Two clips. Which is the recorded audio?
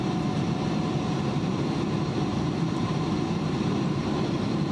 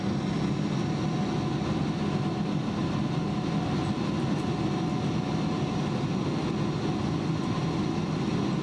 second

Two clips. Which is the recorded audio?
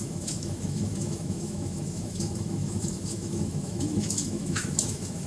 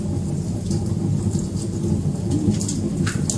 second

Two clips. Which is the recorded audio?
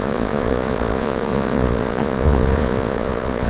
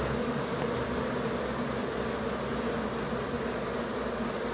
second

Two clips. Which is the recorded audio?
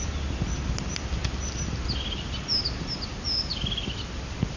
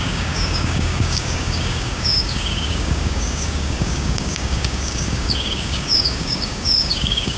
first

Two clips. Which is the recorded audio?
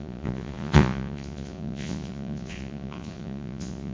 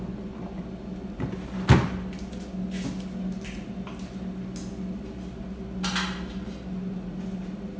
second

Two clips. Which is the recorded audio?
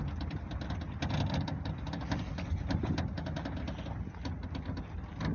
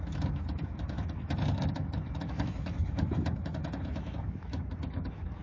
first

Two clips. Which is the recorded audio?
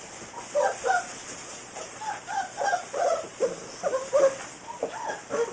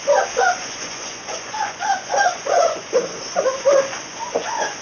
first